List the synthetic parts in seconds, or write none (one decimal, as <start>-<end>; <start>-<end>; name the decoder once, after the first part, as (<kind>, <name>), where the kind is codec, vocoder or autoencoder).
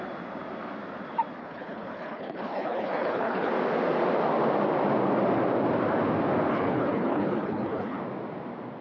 1.4-3.5 (codec, HILCodec); 6.5-8.0